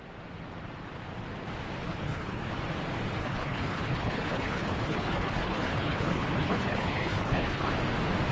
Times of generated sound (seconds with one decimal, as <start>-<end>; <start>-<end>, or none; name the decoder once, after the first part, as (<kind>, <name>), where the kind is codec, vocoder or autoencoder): 1.9-2.5 (codec, HILCodec); 3.2-7.7